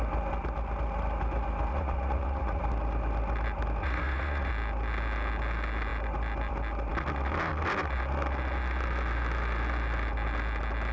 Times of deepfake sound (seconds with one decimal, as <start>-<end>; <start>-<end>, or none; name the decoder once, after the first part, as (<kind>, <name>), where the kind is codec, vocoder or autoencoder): 1.7-2.6 (vocoder, Vocos); 3.8-4.5